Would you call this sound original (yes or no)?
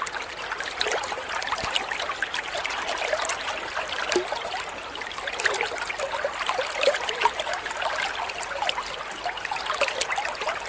yes